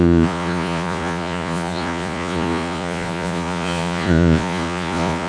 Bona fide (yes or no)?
no